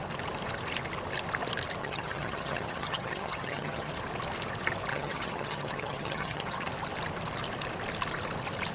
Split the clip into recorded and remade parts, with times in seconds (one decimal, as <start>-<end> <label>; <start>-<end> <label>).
0.0-1.8 recorded; 1.8-3.9 remade; 3.9-4.9 recorded; 4.9-6.7 remade; 6.7-8.7 recorded